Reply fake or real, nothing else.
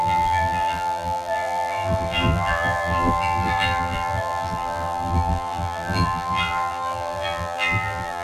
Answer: fake